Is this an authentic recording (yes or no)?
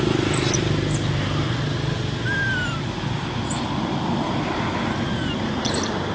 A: yes